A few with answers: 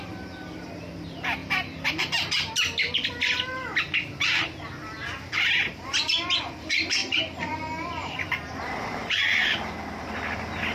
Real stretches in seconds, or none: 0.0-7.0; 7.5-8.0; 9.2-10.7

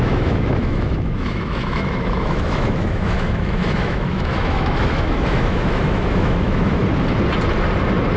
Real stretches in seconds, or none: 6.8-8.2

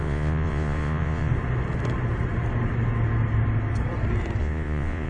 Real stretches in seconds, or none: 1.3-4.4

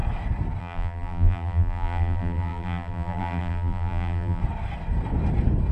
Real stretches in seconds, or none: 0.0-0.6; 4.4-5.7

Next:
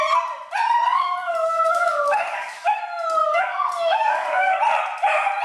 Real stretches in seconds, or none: 0.0-0.9; 2.8-3.2; 4.6-5.4

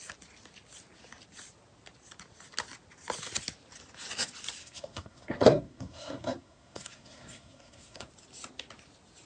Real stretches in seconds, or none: 0.0-4.6; 8.1-9.3

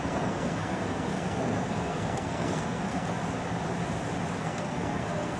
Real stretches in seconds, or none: 3.2-4.4